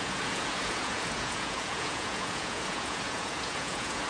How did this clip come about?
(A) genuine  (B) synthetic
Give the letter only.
B